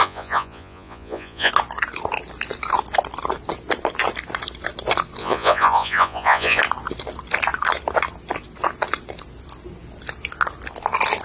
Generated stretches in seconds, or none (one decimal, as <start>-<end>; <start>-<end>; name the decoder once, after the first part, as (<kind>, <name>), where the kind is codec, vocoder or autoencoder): 0.0-1.5 (vocoder, Vocos); 5.2-6.6